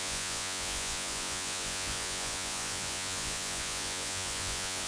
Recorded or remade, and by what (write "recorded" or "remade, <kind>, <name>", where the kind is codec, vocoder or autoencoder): remade, vocoder, Vocos